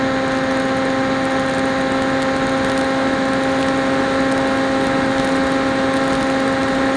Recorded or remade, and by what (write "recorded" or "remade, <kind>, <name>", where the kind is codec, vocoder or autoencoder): recorded